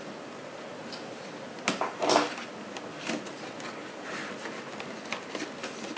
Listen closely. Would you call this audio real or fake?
real